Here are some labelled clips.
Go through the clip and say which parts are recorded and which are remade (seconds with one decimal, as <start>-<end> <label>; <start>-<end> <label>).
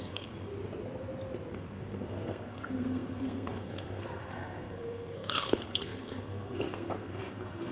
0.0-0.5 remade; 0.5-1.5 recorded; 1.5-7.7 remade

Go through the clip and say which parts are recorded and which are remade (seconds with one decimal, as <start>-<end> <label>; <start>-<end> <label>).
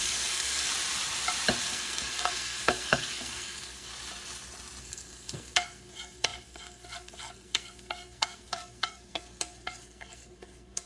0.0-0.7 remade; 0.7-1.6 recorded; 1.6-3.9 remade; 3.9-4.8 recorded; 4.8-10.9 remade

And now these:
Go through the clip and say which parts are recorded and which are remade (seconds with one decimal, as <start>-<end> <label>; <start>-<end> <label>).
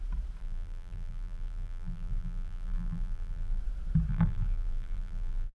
0.0-0.4 recorded; 0.4-3.6 remade; 3.6-4.1 recorded; 4.1-5.5 remade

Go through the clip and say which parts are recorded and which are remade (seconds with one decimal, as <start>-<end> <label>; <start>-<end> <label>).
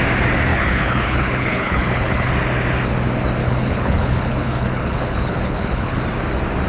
0.0-0.5 recorded; 0.5-2.3 remade; 2.3-3.4 recorded; 3.4-6.0 remade; 6.0-6.7 recorded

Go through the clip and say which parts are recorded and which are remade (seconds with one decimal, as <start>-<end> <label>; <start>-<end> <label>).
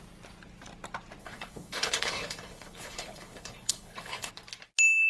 0.0-1.2 recorded; 1.2-4.3 remade; 4.3-5.1 recorded